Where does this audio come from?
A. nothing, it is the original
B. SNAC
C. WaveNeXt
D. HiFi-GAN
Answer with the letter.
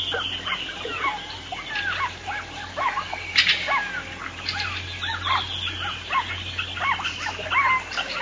A